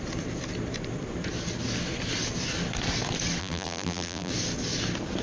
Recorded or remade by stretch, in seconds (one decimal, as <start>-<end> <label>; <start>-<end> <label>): 0.0-3.4 recorded; 3.4-4.3 remade; 4.3-5.2 recorded

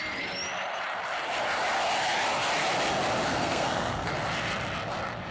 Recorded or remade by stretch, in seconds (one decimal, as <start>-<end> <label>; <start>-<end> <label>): 0.0-3.3 recorded; 3.3-4.1 remade; 4.1-5.3 recorded

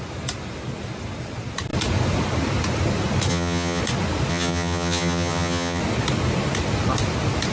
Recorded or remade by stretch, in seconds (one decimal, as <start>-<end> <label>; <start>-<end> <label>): 0.0-3.3 recorded; 3.3-3.8 remade; 3.8-4.3 recorded; 4.3-5.8 remade; 5.8-7.5 recorded

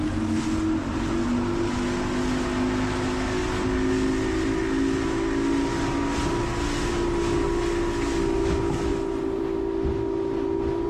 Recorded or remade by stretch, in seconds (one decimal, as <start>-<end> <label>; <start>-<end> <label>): 0.0-10.9 recorded

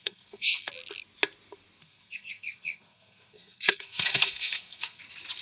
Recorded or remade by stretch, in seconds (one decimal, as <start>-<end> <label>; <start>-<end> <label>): 0.0-0.7 remade; 0.7-1.8 recorded; 1.8-5.0 remade; 5.0-5.4 recorded